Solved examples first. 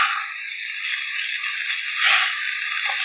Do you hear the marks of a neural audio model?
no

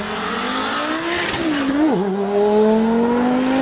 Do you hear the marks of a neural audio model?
no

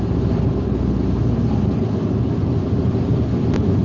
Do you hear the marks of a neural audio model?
no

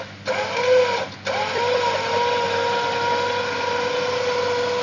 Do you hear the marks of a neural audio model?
no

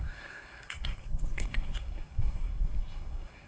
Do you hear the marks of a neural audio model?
yes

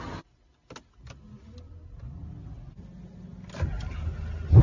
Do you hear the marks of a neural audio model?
no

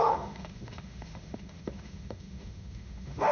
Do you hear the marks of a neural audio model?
yes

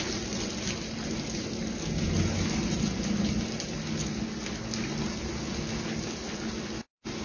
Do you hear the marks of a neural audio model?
no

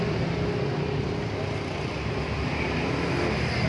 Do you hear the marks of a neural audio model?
no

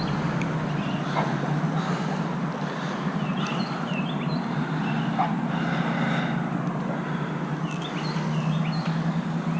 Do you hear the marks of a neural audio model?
no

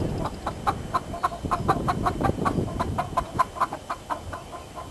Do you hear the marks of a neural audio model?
no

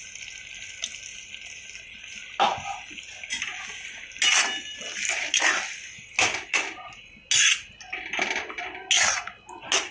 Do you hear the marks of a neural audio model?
no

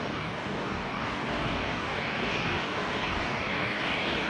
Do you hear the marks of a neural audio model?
yes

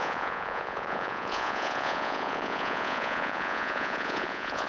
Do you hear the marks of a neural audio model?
yes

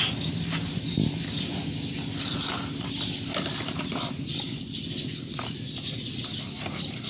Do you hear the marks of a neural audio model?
no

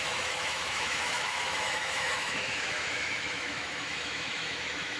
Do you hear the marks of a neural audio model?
yes